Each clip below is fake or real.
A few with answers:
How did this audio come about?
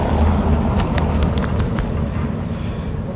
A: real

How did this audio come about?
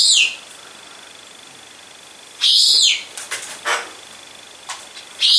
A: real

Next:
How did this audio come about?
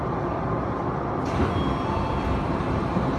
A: real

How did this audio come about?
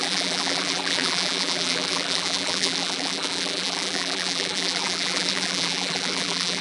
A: fake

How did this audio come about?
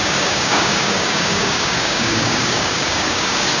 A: fake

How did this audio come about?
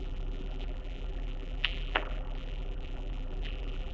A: fake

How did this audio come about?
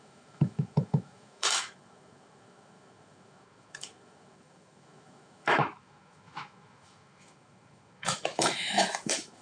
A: fake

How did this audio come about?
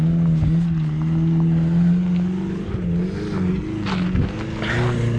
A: real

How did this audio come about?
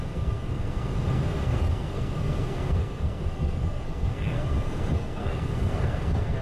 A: fake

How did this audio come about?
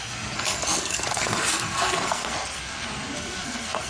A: fake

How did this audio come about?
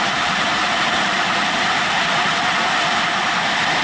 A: fake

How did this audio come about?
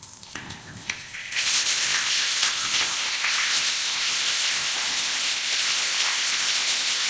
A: fake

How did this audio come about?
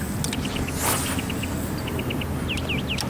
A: real